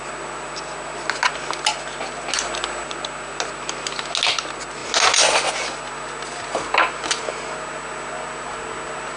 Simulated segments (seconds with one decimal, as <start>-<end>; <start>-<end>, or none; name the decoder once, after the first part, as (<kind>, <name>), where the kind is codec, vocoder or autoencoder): none